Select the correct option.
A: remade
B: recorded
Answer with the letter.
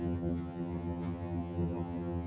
A